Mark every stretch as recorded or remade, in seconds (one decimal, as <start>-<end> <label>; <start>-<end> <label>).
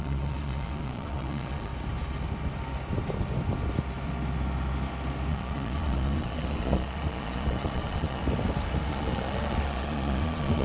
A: 0.0-1.7 remade; 1.7-5.3 recorded; 5.3-8.2 remade; 8.2-8.9 recorded; 8.9-10.6 remade